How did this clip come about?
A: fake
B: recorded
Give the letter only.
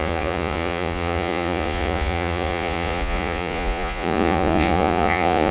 A